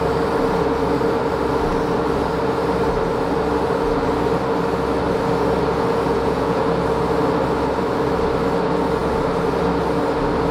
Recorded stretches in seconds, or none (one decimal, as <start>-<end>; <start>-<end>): 0.0-6.1; 6.6-10.5

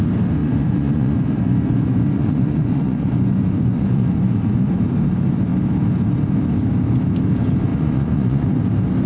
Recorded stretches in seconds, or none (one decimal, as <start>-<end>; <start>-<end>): 0.0-0.4; 4.8-7.7; 8.6-9.1

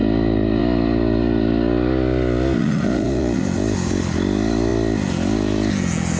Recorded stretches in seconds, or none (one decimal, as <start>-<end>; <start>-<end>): 0.0-2.6; 3.4-6.2

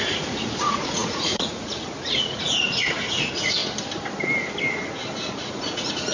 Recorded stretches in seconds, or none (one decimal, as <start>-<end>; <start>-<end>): 3.6-5.4